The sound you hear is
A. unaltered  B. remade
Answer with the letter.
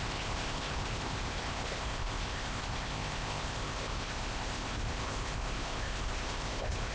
B